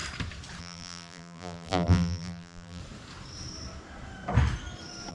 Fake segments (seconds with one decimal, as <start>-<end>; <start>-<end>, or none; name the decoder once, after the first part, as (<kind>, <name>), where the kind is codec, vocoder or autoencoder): 0.6-2.8 (vocoder, BigVGAN v2)